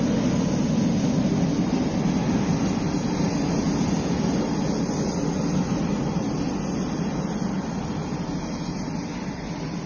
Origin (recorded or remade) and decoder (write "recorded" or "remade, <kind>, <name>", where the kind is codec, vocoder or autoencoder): recorded